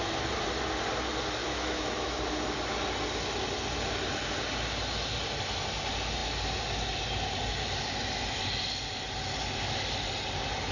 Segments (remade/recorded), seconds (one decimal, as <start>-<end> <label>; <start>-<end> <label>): 0.0-1.4 recorded; 1.4-2.2 remade; 2.2-10.7 recorded